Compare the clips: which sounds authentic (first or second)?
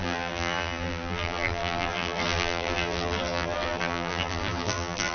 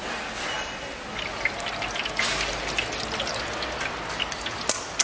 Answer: second